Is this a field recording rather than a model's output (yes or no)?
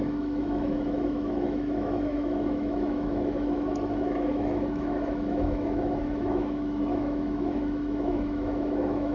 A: no